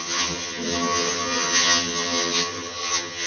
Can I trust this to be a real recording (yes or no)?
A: no